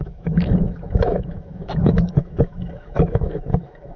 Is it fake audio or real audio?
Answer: fake